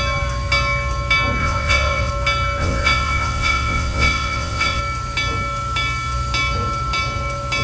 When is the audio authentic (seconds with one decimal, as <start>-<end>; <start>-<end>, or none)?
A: 0.0-1.4; 2.1-2.6; 4.8-7.6